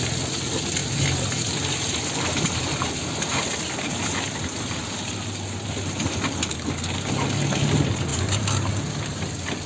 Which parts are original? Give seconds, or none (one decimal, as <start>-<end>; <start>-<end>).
0.0-0.8; 4.3-8.1; 8.8-9.7